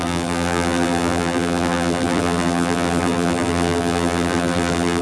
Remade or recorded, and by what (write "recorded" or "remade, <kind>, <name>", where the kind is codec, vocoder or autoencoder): remade, vocoder, BigVGAN v2